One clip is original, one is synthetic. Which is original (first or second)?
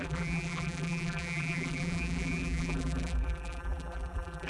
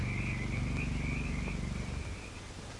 second